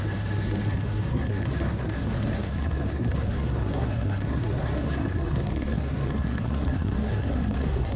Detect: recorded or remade remade